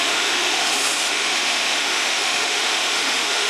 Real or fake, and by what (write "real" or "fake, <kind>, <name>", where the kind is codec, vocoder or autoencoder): fake, autoencoder, DAC-VAE